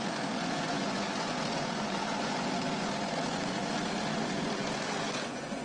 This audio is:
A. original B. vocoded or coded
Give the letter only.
B